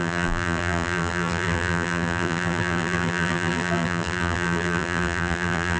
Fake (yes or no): yes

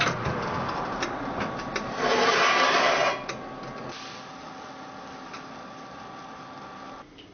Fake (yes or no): no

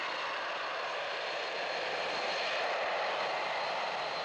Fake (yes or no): yes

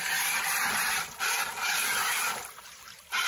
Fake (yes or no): no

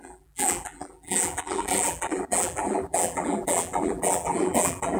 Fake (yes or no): yes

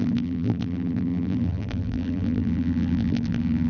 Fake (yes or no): yes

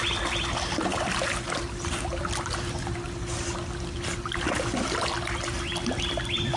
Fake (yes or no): no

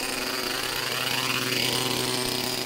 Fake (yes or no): no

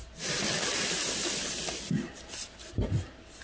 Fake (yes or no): no